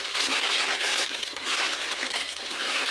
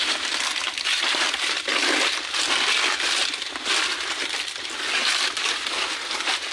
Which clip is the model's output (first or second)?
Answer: first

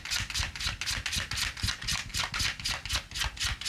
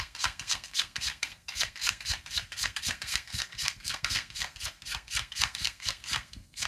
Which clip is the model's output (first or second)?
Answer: second